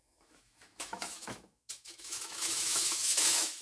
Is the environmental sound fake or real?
fake